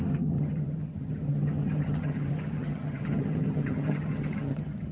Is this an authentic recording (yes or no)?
no